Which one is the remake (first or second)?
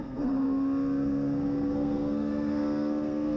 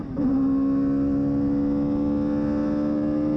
first